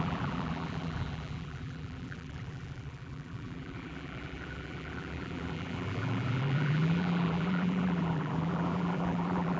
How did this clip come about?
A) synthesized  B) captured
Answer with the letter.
A